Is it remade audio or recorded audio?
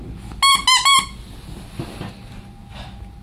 recorded